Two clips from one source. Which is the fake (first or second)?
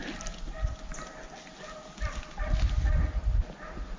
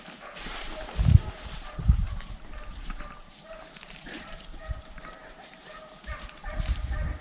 second